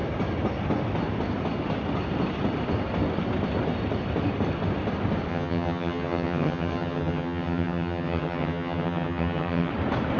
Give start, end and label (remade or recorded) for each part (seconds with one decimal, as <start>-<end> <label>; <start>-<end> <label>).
0.0-5.3 recorded; 5.3-9.7 remade; 9.7-10.2 recorded